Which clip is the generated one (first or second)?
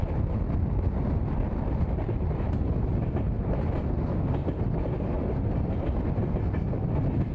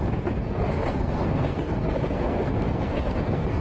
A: second